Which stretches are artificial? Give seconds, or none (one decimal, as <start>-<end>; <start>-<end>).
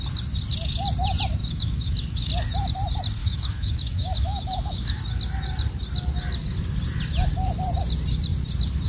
1.4-2.3; 3.2-5.0